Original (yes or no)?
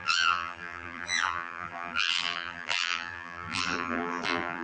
no